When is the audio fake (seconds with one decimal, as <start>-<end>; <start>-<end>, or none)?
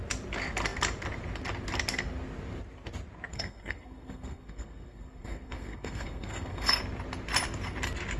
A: 3.3-6.8